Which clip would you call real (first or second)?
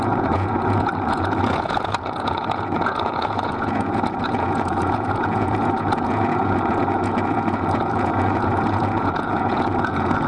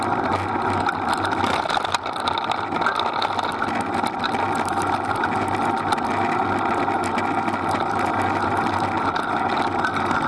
second